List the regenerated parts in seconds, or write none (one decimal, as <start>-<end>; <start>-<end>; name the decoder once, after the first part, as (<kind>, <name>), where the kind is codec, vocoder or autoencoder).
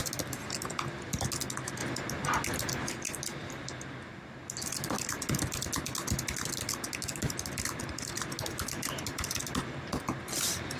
none